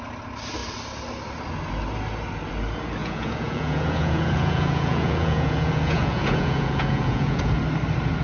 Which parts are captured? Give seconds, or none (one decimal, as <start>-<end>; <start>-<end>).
0.0-3.0; 7.5-8.2